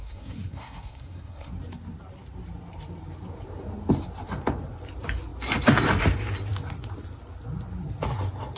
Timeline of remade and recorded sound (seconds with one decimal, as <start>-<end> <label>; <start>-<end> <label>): 0.0-1.5 remade; 1.5-8.6 recorded